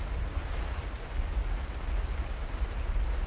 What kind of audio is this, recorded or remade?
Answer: recorded